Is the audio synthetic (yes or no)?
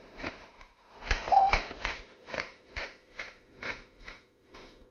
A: yes